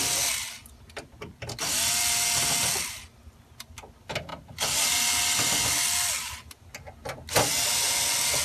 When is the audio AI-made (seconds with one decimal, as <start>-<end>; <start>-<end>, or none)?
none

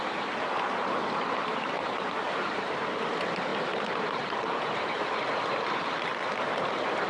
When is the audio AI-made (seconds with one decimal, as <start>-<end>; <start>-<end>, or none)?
1.5-3.1; 3.5-5.2

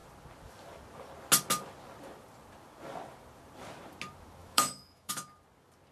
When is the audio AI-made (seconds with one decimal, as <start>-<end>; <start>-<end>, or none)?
4.4-5.1

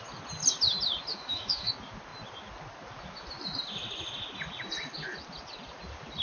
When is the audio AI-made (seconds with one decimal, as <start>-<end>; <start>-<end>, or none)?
1.1-1.7

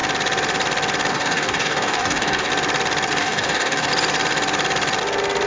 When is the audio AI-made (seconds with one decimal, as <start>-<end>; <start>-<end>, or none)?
1.1-2.5; 3.2-3.9

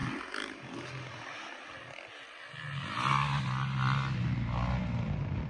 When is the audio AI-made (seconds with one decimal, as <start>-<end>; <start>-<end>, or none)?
none

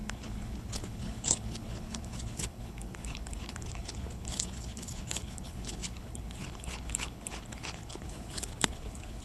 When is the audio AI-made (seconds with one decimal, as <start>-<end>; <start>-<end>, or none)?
0.0-9.2